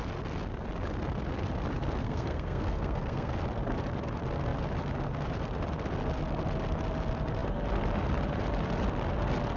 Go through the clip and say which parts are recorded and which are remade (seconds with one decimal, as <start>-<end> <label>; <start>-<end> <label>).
0.0-2.0 recorded; 2.0-3.3 remade; 3.3-9.6 recorded